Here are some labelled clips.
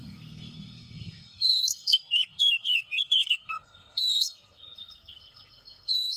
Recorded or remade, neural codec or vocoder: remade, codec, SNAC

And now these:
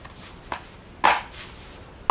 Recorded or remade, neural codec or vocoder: recorded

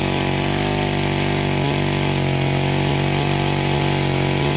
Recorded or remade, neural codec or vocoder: recorded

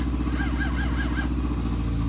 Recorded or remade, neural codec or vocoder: recorded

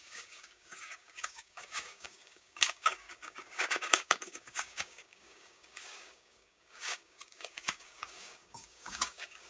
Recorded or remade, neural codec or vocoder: remade, codec, DAC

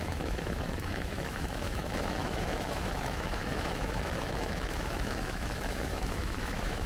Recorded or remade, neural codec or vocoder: remade, autoencoder, DAC-VAE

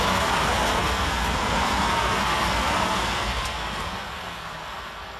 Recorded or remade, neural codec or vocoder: remade, codec, SNAC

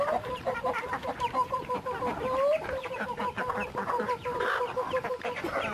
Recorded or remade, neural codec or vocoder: recorded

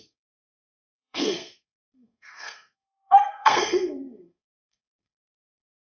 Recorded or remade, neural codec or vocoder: remade, codec, SNAC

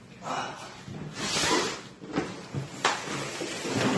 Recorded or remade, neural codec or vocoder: recorded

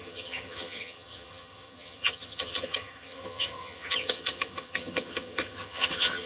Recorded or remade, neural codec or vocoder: remade, vocoder, HiFi-GAN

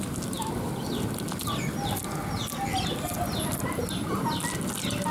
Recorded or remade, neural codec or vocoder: recorded